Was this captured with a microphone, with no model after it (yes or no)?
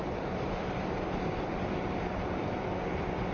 no